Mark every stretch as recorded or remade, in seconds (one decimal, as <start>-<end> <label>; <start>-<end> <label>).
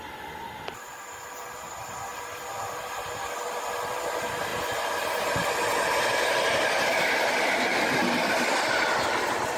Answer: 0.0-9.6 recorded